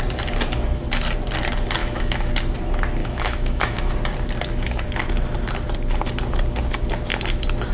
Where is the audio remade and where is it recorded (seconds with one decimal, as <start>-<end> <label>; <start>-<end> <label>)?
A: 0.0-1.8 recorded; 1.8-2.3 remade; 2.3-3.0 recorded; 3.0-3.9 remade; 3.9-7.7 recorded